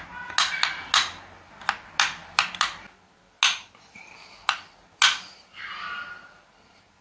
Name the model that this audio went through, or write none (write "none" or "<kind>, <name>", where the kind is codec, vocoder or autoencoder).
none